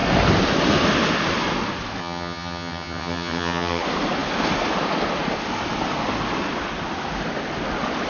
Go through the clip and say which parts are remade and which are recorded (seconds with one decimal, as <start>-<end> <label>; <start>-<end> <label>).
0.0-2.0 recorded; 2.0-3.8 remade; 3.8-8.1 recorded